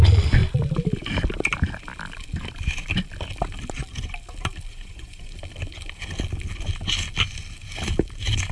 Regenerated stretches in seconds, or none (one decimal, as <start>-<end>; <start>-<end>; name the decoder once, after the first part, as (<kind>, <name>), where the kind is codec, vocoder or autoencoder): 4.7-5.4 (vocoder, Vocos)